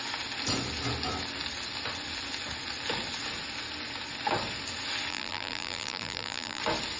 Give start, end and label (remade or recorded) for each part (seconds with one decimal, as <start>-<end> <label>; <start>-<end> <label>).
0.0-5.1 recorded; 5.1-6.6 remade; 6.6-7.0 recorded